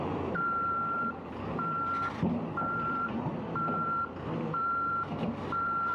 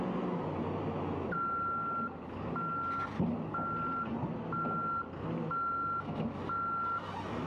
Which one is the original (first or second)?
second